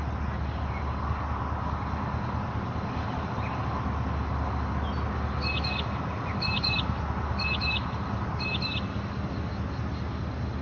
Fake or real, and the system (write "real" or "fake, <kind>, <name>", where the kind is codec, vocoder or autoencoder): real